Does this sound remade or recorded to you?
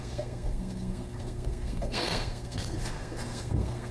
remade